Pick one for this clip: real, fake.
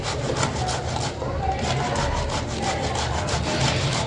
real